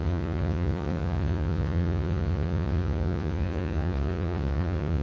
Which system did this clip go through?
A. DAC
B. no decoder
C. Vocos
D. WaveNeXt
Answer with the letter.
C